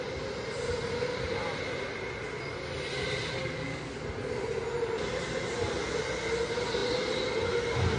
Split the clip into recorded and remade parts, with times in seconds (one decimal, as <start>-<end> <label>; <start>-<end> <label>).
0.0-3.4 recorded; 3.4-4.0 remade; 4.0-8.0 recorded

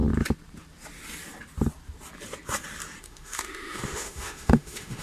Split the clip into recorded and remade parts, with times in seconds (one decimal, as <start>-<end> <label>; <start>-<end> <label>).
0.0-3.0 recorded; 3.0-5.0 remade

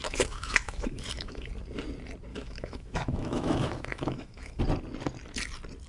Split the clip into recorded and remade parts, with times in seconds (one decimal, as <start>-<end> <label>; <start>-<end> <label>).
0.0-1.5 remade; 1.5-2.3 recorded; 2.3-4.6 remade; 4.6-5.9 recorded

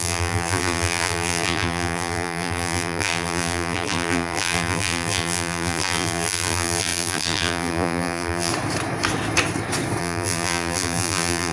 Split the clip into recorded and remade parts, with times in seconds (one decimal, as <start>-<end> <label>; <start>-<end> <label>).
0.0-8.5 remade; 8.5-10.0 recorded; 10.0-11.5 remade

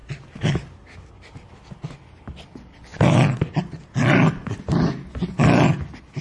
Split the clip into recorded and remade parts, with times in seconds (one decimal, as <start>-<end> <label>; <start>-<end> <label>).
0.0-6.2 recorded

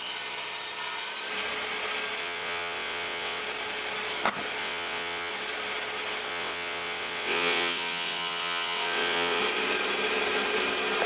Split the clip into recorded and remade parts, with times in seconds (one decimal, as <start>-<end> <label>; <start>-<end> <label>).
0.0-2.2 recorded; 2.2-3.4 remade; 3.4-4.6 recorded; 4.6-5.3 remade; 5.3-6.3 recorded; 6.3-9.4 remade; 9.4-11.1 recorded